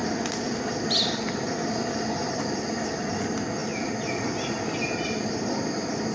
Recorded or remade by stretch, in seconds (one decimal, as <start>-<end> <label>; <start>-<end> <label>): 0.0-6.1 recorded